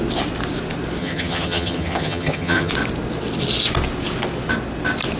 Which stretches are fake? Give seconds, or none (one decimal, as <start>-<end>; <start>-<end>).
1.0-2.7